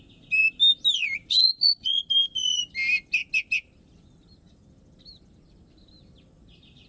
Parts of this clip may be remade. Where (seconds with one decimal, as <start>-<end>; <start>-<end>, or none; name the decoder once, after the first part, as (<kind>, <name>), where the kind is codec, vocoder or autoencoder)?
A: 1.4-2.1 (vocoder, Vocos)